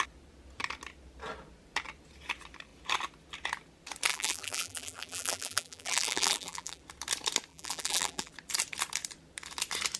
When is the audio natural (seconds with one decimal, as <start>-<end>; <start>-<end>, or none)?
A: 0.0-4.1; 6.8-7.5; 8.3-10.0